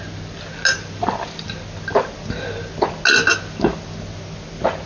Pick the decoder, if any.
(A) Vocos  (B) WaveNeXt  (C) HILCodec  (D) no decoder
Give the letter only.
D